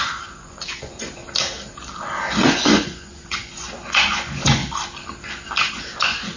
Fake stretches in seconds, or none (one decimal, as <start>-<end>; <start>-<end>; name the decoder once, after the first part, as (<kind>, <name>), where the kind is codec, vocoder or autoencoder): 0.0-1.2 (vocoder, Vocos); 2.4-4.6; 5.7-6.4